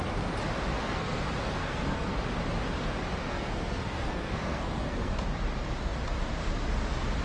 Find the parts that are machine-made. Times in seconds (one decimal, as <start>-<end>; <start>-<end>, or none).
0.7-1.2; 1.6-2.2; 3.3-5.1